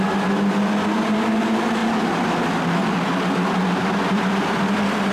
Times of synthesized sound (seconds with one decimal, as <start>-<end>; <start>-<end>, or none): 3.8-5.1